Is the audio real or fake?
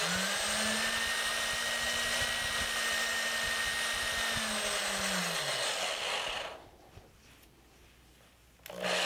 real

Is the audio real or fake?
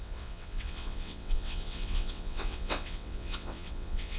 fake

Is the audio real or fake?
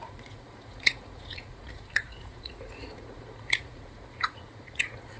fake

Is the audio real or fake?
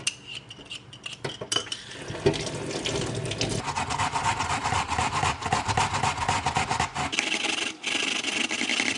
real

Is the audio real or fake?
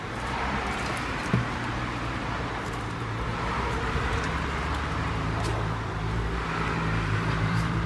fake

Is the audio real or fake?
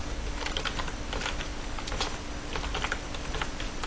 real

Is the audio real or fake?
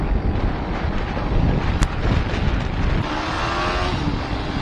real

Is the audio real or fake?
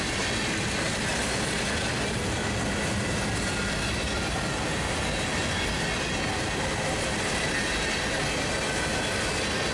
real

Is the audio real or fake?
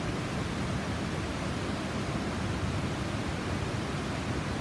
real